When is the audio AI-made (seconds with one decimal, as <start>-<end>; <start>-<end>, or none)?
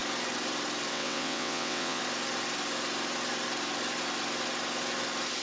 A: 0.9-2.0